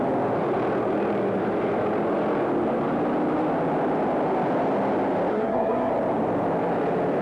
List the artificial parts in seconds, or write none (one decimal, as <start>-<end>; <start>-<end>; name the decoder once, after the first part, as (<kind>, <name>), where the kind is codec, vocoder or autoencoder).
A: 5.3-5.9 (codec, SNAC)